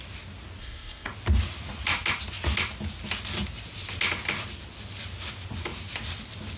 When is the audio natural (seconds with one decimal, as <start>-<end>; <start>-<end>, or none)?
0.0-0.6; 1.1-6.6